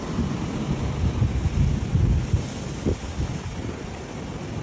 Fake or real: real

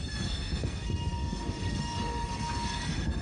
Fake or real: fake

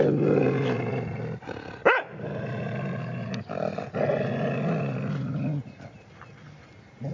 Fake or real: real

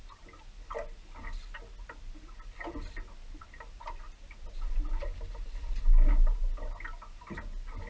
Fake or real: real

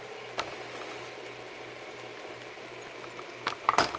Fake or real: real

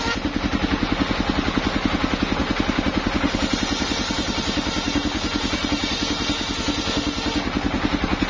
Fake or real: real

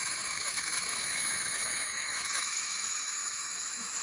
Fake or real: fake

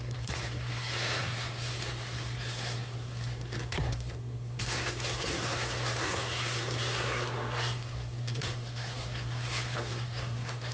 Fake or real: fake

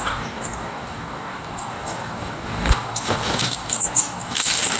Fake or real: fake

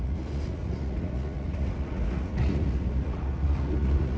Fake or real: fake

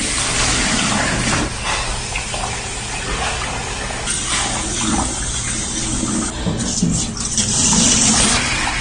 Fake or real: real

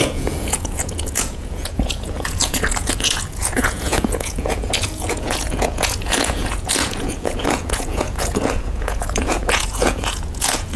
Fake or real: fake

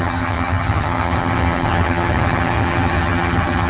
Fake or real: fake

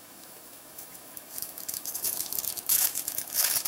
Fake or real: fake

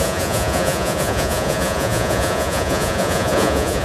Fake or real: fake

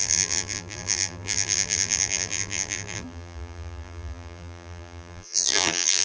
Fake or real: fake